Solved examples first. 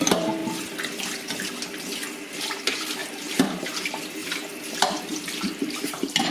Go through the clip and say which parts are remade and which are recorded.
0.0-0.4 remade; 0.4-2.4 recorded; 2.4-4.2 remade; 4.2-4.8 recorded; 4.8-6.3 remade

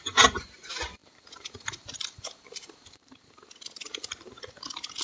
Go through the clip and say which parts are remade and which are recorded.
0.0-5.0 remade